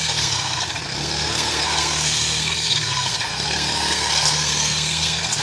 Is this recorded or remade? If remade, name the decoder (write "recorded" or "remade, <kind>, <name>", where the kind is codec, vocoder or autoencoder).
remade, codec, SNAC